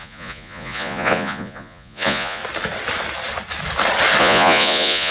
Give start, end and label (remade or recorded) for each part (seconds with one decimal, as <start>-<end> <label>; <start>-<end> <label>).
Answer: 0.0-2.4 remade; 2.4-4.2 recorded; 4.2-5.1 remade